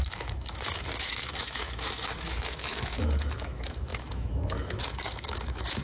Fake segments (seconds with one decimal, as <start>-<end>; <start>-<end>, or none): 0.0-5.8